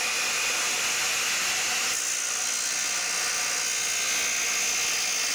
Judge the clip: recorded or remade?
recorded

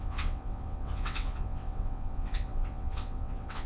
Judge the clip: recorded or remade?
remade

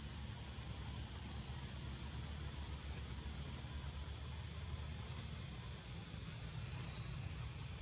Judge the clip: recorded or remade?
recorded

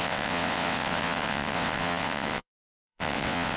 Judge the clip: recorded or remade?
remade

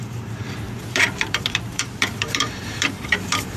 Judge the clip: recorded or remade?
remade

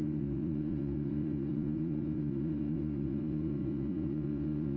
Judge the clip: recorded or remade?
remade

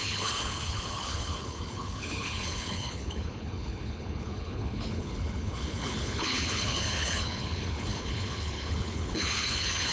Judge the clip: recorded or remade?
remade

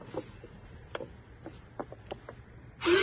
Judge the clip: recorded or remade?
remade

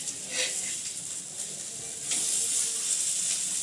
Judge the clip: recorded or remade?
recorded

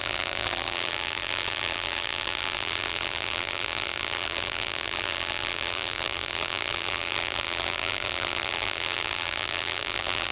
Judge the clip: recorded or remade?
remade